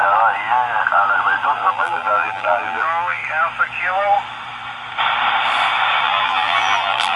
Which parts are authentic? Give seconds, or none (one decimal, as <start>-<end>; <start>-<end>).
0.0-1.7; 3.2-6.0